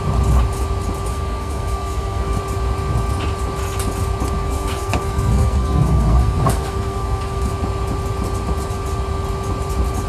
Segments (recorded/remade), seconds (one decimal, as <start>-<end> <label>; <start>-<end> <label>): 0.0-1.1 recorded; 1.1-2.4 remade; 2.4-4.4 recorded; 4.4-7.5 remade; 7.5-10.1 recorded